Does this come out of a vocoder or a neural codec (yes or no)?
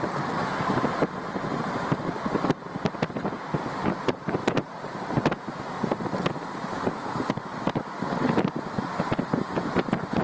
no